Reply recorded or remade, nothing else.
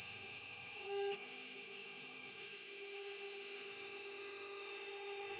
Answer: remade